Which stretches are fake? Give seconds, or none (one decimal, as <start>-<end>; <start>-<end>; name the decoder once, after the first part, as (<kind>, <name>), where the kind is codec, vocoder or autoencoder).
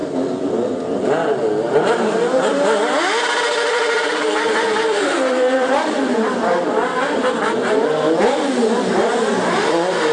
1.6-10.1 (vocoder, BigVGAN v2)